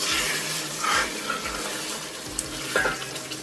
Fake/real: fake